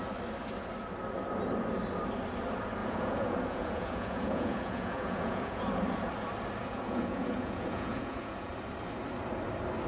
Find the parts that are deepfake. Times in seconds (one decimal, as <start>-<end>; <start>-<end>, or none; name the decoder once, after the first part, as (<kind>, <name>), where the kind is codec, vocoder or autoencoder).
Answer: 2.8-5.6 (vocoder, Vocos); 6.6-8.5